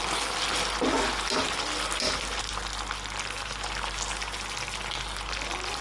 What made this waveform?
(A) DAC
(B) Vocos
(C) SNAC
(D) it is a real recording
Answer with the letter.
D